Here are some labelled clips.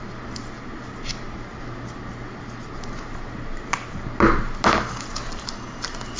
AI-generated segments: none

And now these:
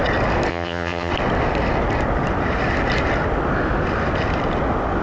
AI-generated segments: 0.5-1.1 (vocoder, HiFi-GAN)

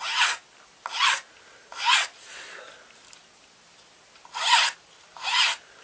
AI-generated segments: none

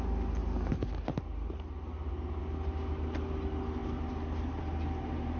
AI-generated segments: none

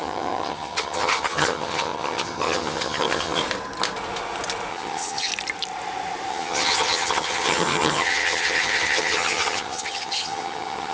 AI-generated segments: 0.0-3.4 (vocoder, HiFi-GAN); 4.7-5.3; 6.3-10.9